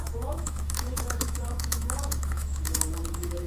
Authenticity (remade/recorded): remade